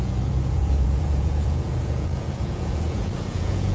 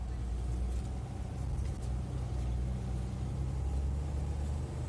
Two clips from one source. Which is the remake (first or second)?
first